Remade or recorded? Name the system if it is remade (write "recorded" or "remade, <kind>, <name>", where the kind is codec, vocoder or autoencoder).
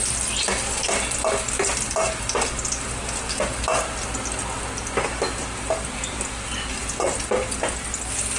recorded